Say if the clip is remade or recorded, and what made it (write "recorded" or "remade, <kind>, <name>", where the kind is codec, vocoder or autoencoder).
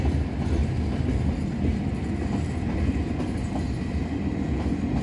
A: recorded